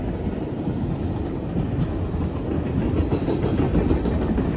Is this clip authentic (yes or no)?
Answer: yes